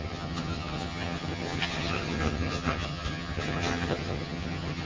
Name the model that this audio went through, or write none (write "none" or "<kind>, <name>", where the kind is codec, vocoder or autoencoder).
vocoder, HiFi-GAN